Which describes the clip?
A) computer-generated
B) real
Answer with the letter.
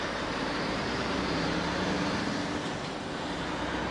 A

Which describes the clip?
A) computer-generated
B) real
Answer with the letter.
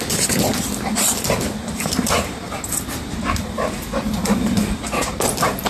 A